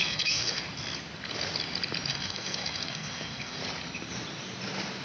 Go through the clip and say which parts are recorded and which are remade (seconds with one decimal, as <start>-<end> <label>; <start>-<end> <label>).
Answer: 0.0-0.6 remade; 0.6-2.1 recorded; 2.1-3.6 remade; 3.6-5.0 recorded